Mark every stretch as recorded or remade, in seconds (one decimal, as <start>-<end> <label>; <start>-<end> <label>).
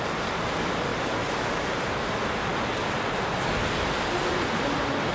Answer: 0.0-5.1 recorded